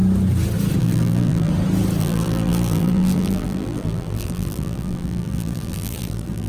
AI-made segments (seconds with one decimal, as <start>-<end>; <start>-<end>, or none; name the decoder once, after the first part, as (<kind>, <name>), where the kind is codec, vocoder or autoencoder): 0.8-1.5 (vocoder, BigVGAN v2); 2.0-6.5